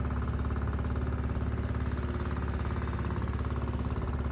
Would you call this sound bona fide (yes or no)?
yes